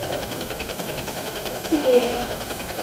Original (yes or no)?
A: no